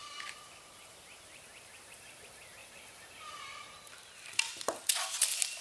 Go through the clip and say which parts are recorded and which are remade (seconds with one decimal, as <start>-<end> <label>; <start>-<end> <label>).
0.0-2.1 remade; 2.1-2.6 recorded; 2.6-3.4 remade; 3.4-5.6 recorded